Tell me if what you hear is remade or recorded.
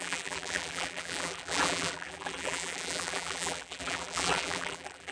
remade